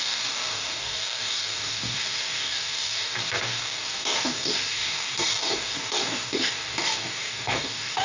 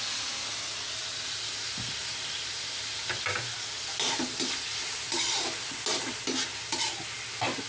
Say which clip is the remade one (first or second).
first